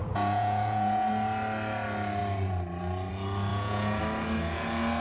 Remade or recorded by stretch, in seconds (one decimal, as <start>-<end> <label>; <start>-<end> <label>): 0.0-1.1 remade; 1.1-3.5 recorded; 3.5-4.0 remade; 4.0-5.0 recorded

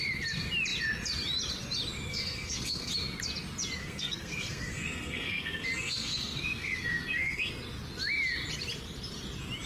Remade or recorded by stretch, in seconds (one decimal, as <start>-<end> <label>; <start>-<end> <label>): 0.0-2.1 recorded; 2.1-2.9 remade; 2.9-3.8 recorded; 3.8-7.5 remade; 7.5-9.7 recorded

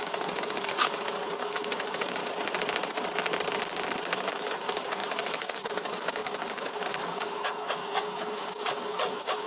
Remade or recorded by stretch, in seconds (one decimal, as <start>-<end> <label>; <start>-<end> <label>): 0.0-2.2 remade; 2.2-4.3 recorded; 4.3-9.5 remade

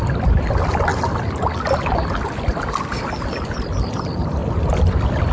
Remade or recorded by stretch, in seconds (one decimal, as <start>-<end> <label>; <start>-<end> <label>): 0.0-5.3 recorded

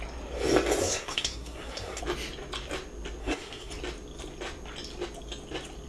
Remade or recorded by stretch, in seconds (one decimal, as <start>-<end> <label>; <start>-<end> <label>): 0.0-0.8 recorded; 0.8-2.0 remade; 2.0-3.2 recorded; 3.2-3.7 remade; 3.7-5.9 recorded

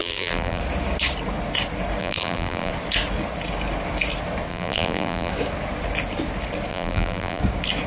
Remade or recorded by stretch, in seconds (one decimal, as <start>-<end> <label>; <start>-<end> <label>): 0.0-0.6 remade; 0.6-2.0 recorded; 2.0-2.7 remade; 2.7-4.5 recorded; 4.5-5.3 remade; 5.3-6.7 recorded; 6.7-7.4 remade; 7.4-7.9 recorded

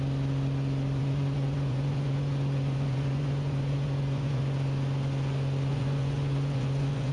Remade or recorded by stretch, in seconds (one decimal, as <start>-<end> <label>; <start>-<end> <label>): 0.0-1.0 recorded; 1.0-4.4 remade; 4.4-5.7 recorded; 5.7-7.1 remade